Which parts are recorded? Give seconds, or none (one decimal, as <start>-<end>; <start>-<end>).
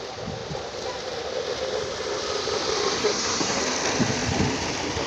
0.0-3.0; 3.6-5.1